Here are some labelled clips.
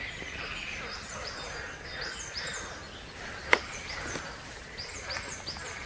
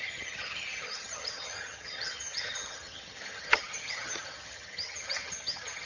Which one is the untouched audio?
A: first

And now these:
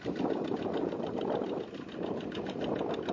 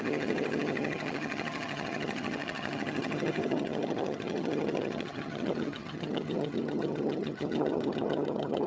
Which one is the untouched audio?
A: first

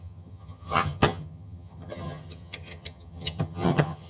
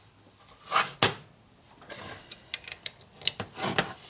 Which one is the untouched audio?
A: second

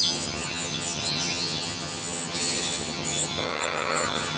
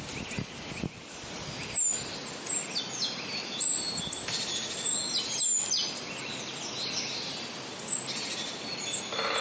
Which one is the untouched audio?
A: second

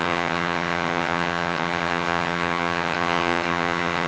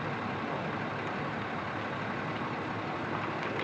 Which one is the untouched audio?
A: second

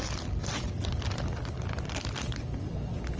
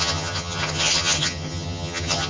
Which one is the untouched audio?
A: first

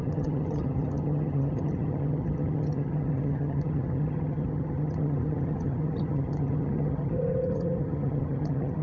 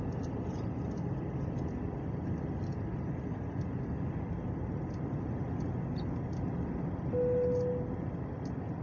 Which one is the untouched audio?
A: second